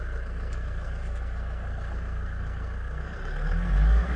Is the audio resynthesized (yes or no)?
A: yes